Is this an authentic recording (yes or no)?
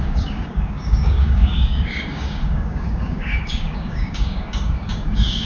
no